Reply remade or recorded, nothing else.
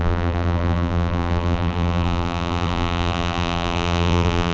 remade